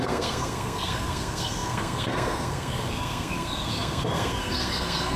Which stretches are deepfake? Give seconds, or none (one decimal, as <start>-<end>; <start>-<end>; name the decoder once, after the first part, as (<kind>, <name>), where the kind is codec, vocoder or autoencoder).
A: 0.0-5.2 (codec, SNAC)